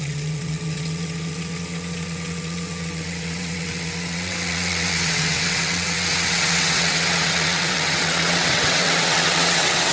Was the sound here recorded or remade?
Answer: remade